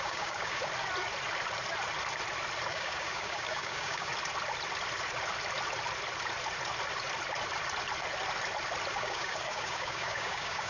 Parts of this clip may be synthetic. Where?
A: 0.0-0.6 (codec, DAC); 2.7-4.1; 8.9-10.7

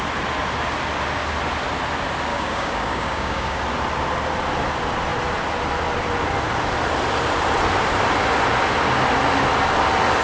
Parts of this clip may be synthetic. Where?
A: 2.3-3.6 (codec, DAC)

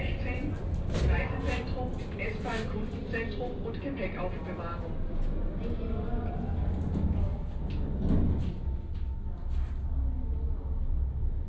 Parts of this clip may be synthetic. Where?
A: none

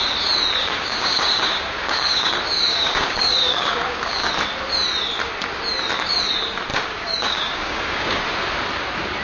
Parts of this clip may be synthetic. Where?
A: 0.6-2.3 (codec, DAC); 2.7-4.3; 6.7-8.2

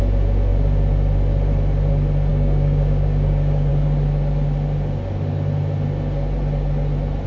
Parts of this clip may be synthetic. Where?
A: 2.3-3.7 (codec, DAC)

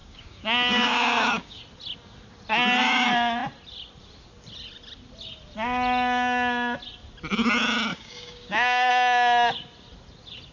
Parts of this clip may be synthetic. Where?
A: 0.0-1.6 (codec, DAC); 7.9-8.9

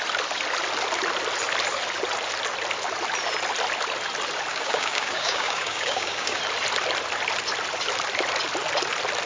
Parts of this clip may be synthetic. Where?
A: 4.5-6.4 (codec, DAC)

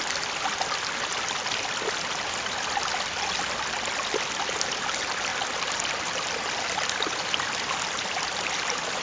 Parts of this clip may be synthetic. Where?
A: none